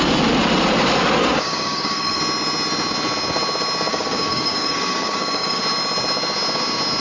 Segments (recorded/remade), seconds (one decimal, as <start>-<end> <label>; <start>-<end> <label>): 0.0-1.2 recorded; 1.2-2.2 remade; 2.2-3.9 recorded; 3.9-5.6 remade; 5.6-7.0 recorded